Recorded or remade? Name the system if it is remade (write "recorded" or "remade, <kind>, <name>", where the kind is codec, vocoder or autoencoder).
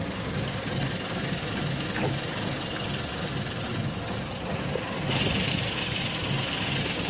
recorded